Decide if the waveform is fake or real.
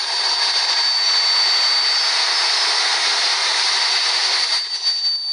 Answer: real